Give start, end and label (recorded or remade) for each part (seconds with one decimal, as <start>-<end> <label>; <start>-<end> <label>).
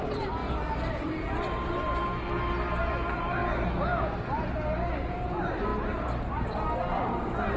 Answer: 0.0-0.4 remade; 0.4-0.9 recorded; 0.9-2.1 remade; 2.1-2.8 recorded; 2.8-3.4 remade; 3.4-4.5 recorded; 4.5-5.7 remade; 5.7-7.6 recorded